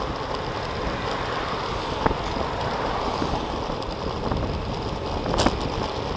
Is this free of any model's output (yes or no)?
yes